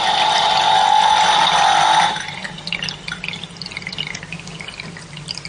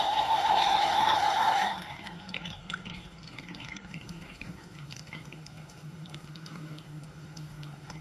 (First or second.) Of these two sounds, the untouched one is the first